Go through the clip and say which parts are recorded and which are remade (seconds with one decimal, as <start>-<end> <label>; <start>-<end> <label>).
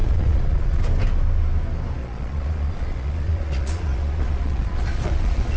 0.0-0.8 remade; 0.8-2.0 recorded; 2.0-5.6 remade